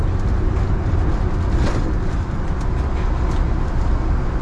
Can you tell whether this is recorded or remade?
recorded